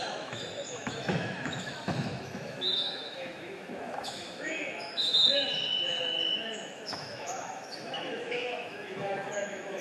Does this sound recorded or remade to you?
remade